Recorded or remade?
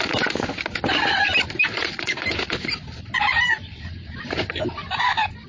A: recorded